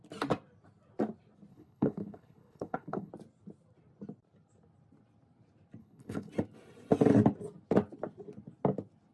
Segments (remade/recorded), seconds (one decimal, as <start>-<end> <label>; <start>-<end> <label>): 0.0-1.5 recorded; 1.5-3.1 remade; 3.1-5.8 recorded; 5.8-6.3 remade; 6.3-9.1 recorded